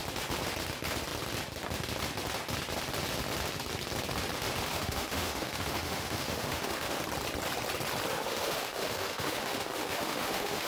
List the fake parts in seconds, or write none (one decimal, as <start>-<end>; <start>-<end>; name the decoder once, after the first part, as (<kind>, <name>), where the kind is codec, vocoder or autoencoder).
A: 4.7-7.0 (autoencoder, DAC-VAE); 8.1-10.7